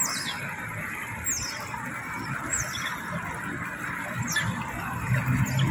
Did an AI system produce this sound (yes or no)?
no